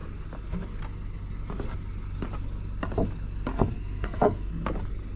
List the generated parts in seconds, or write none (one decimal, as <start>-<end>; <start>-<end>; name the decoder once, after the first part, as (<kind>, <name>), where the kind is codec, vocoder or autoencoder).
3.5-4.5 (codec, SNAC)